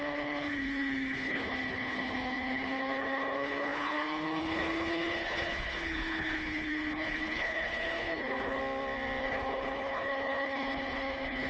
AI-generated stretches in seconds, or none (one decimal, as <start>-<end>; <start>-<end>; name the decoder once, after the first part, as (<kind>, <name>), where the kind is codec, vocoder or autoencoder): 0.0-8.6 (codec, HILCodec); 9.2-11.5